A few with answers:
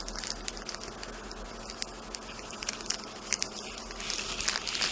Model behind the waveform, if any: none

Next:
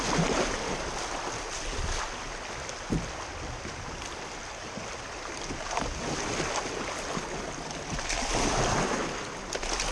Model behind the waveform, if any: none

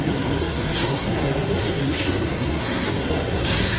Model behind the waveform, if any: codec, SNAC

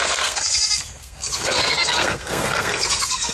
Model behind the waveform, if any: codec, SNAC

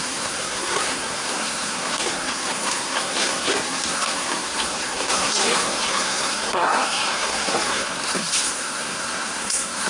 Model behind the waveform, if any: codec, SNAC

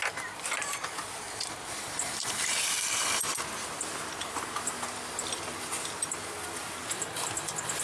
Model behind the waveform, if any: none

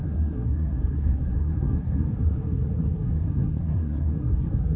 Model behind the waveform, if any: codec, SNAC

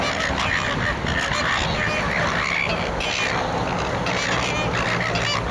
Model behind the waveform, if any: none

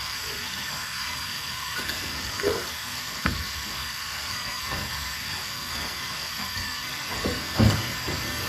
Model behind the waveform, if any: codec, SNAC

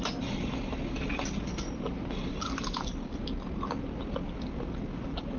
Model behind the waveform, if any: none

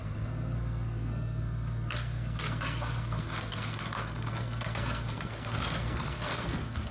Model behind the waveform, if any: codec, SNAC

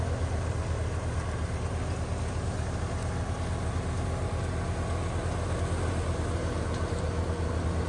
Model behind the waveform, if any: none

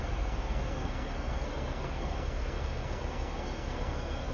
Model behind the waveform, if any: codec, SNAC